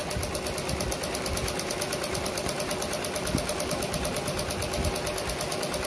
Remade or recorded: recorded